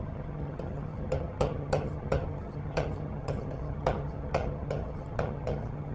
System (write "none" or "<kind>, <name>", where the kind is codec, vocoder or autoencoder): vocoder, HiFi-GAN